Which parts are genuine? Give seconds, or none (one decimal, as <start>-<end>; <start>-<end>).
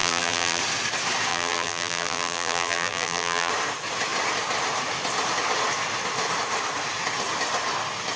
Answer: 0.6-1.3; 3.5-8.2